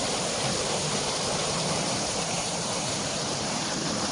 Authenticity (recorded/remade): remade